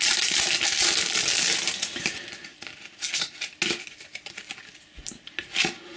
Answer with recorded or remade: recorded